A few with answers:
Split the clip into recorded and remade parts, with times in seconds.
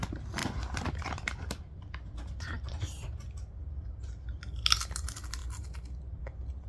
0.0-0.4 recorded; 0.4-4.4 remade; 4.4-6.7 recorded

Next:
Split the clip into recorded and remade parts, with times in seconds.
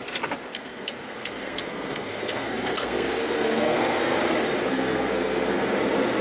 0.0-0.5 recorded; 0.5-4.2 remade; 4.2-4.7 recorded; 4.7-5.6 remade; 5.6-6.2 recorded